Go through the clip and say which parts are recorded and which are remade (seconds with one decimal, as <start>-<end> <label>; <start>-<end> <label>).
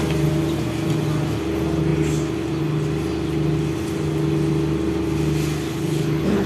0.0-5.7 recorded; 5.7-6.5 remade